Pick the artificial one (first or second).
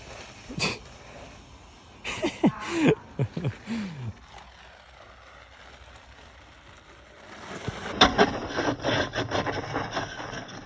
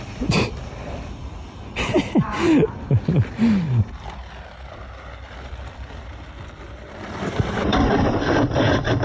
second